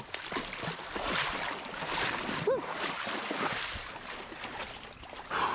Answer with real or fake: real